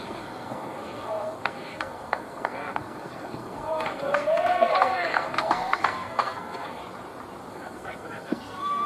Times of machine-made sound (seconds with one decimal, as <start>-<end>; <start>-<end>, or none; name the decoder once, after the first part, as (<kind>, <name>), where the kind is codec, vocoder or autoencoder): 0.0-6.8 (codec, SNAC); 7.5-8.9